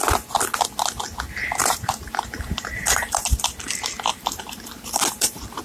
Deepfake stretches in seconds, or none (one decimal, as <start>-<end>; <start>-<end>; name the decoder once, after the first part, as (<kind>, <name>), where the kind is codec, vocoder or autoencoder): 1.4-3.4 (vocoder, BigVGAN v2); 4.1-5.6

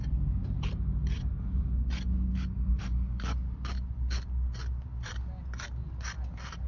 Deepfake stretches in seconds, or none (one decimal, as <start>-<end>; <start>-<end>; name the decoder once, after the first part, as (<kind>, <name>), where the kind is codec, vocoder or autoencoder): none

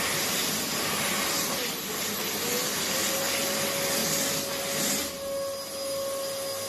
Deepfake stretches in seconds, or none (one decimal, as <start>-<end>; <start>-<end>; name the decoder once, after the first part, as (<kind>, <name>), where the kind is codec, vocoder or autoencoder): none

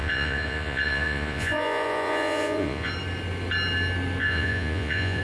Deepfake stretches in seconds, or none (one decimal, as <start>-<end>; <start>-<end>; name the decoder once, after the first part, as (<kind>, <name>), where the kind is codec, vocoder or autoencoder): 0.0-2.9 (vocoder, Vocos); 4.2-5.2

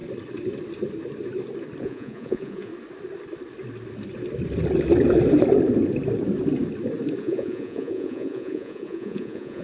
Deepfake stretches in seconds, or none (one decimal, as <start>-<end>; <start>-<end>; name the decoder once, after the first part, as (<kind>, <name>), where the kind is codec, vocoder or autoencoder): 1.8-2.7 (vocoder, Vocos); 7.2-9.6

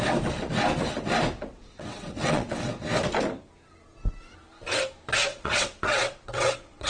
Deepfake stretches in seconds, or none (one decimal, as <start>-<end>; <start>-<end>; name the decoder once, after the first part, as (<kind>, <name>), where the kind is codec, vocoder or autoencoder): 1.5-2.7 (vocoder, WaveNeXt); 5.3-6.9

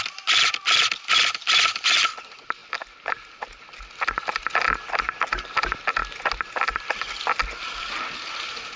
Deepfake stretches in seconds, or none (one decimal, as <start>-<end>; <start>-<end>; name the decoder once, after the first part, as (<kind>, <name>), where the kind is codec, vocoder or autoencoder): none

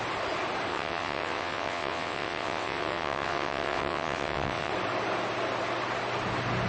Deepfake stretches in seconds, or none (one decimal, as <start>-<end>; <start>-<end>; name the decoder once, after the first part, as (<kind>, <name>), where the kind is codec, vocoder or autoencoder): 0.7-4.7 (vocoder, WaveNeXt)